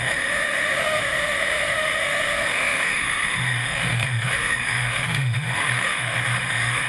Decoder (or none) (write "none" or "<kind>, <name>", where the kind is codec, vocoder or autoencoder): autoencoder, DAC-VAE